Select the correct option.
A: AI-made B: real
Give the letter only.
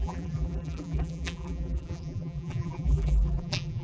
A